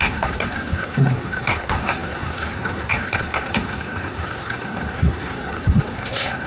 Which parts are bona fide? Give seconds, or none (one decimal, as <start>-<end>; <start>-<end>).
none